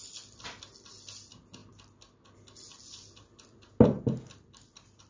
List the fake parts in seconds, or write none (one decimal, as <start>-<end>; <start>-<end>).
none